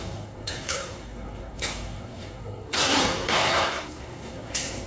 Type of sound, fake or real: fake